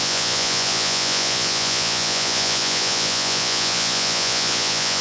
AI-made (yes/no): yes